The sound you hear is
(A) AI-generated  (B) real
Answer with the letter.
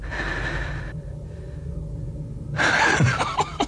B